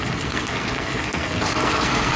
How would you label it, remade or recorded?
remade